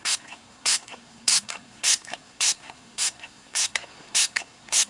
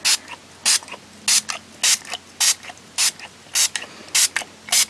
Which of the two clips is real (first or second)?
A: second